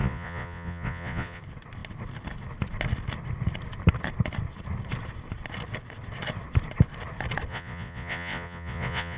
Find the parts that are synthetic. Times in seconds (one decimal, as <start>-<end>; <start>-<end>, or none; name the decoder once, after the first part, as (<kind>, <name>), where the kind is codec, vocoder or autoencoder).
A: 0.0-1.4 (vocoder, Vocos); 7.5-9.2